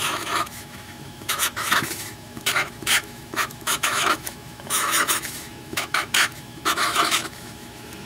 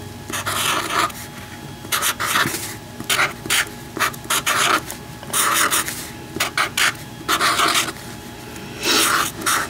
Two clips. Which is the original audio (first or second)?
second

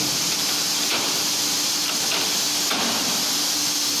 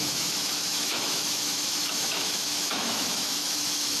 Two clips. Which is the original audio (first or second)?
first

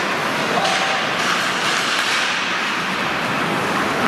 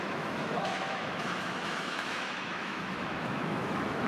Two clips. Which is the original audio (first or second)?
first